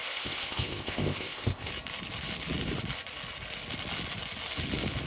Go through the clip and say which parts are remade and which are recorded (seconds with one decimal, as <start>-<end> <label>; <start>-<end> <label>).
0.0-1.7 remade; 1.7-5.1 recorded